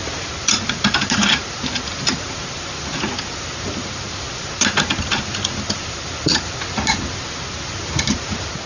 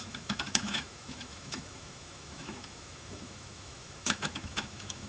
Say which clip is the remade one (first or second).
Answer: second